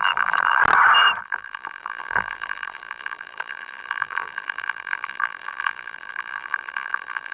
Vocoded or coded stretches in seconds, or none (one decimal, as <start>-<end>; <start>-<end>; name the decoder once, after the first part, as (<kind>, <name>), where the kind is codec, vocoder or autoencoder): 0.0-0.6 (vocoder, BigVGAN v2); 1.2-7.3